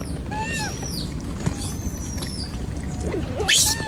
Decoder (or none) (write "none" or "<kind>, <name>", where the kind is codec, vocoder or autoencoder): vocoder, BigVGAN v2